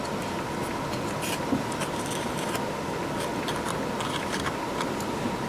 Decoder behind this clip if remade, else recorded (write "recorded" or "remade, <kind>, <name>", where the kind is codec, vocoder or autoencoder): recorded